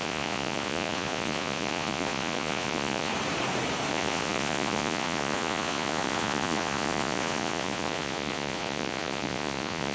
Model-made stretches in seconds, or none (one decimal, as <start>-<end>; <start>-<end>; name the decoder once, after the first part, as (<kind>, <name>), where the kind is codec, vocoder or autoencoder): 0.0-3.1 (vocoder, Vocos); 3.9-9.9